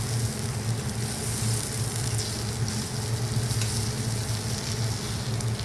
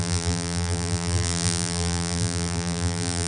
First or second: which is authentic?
first